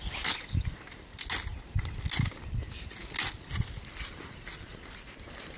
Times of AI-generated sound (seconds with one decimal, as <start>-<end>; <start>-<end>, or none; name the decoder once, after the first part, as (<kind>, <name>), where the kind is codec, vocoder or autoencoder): none